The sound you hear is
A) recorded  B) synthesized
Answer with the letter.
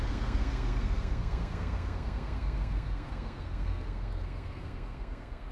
B